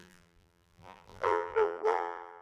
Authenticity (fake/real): fake